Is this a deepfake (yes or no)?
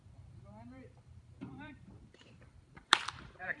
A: yes